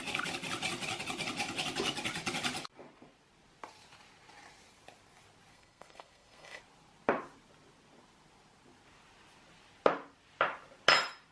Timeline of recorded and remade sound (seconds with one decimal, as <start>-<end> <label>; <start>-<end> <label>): 0.0-5.5 recorded; 5.5-6.6 remade; 6.6-11.3 recorded